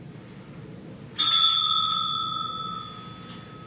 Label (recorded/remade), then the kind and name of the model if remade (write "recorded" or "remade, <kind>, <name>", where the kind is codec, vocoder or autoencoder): recorded